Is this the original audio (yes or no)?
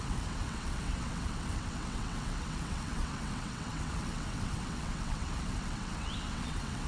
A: no